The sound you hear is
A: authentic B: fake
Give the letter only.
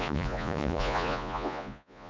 B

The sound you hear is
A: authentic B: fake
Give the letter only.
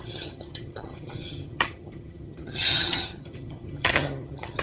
B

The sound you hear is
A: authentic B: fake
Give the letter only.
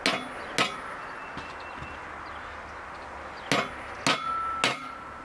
A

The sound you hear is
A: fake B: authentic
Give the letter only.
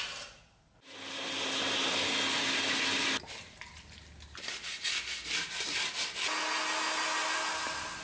B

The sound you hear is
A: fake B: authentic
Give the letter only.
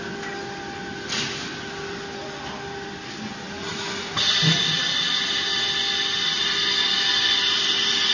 B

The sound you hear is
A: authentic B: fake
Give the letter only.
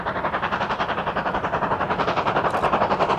B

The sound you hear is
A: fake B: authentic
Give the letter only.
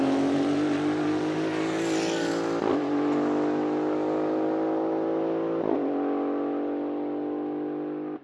B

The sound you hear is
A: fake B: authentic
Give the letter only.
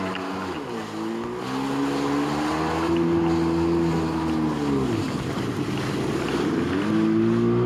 B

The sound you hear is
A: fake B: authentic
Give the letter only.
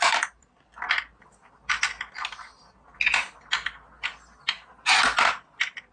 B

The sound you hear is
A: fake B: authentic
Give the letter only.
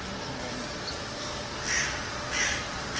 B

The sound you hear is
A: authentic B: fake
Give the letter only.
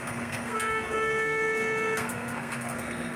B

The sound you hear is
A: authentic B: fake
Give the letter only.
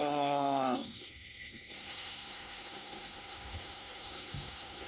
B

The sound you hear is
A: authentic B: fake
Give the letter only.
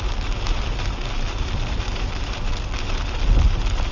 A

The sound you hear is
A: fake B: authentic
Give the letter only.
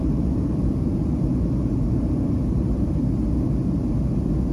A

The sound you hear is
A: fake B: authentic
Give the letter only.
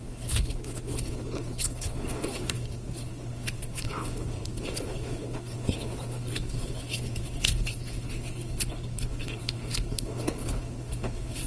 A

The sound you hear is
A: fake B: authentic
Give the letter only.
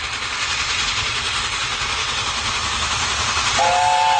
B